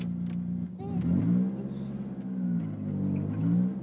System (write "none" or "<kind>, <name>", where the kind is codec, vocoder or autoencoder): none